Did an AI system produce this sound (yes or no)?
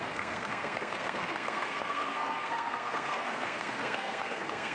yes